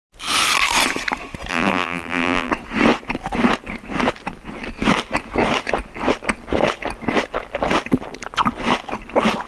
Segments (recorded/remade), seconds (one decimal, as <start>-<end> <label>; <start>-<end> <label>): 0.0-1.5 recorded; 1.5-2.5 remade; 2.5-9.5 recorded